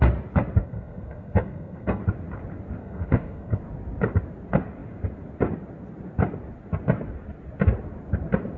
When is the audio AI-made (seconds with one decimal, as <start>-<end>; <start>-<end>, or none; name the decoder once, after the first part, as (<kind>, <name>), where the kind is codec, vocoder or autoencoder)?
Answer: 0.6-2.0 (codec, SNAC); 2.8-3.6